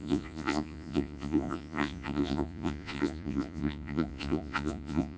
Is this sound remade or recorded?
remade